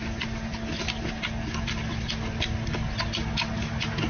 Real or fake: real